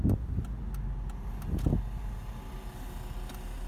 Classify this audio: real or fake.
real